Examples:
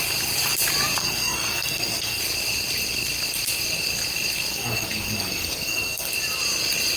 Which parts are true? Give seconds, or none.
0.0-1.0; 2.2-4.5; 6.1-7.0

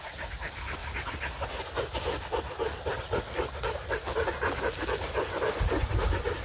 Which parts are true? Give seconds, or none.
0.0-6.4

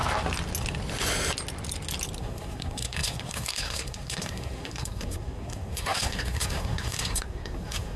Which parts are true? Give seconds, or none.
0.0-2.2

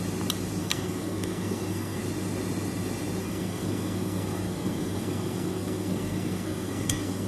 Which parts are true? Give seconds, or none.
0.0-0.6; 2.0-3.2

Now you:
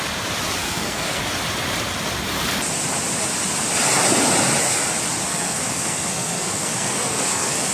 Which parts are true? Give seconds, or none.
0.0-0.6; 1.2-5.3

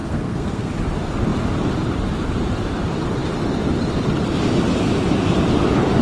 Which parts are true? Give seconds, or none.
0.7-6.0

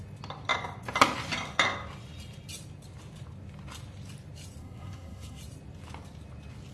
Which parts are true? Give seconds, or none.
0.0-4.6; 5.4-6.7